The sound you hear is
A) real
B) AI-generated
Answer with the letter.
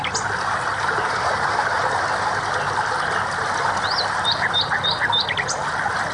A